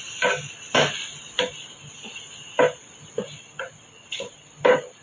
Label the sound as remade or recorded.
recorded